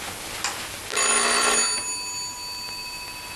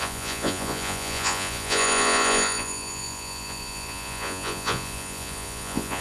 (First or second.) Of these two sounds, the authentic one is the first